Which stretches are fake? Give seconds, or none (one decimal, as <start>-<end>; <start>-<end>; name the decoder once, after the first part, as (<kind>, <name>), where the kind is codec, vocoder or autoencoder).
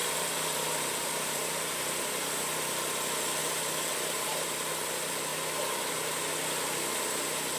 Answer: 0.0-2.3 (vocoder, BigVGAN v2); 3.4-4.7